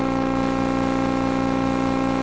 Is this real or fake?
real